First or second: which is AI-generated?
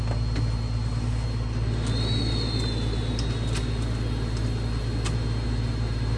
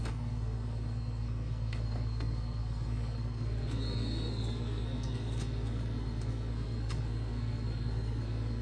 second